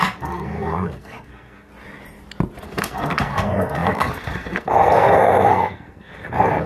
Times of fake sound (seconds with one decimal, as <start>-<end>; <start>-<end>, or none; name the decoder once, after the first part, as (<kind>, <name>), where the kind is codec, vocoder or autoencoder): 0.0-1.7 (codec, SNAC); 2.6-6.7